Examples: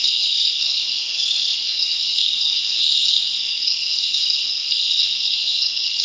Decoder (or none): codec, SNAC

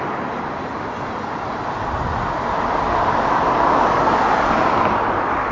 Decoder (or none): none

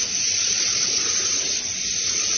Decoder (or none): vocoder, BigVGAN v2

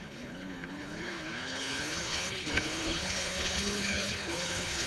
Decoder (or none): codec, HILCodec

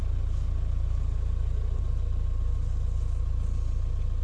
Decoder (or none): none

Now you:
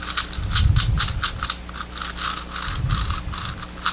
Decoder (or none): none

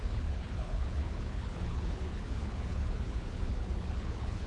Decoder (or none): codec, HILCodec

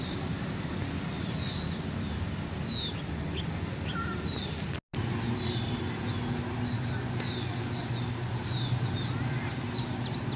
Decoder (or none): none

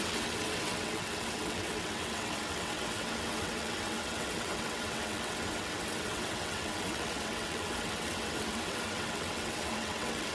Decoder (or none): vocoder, WaveNeXt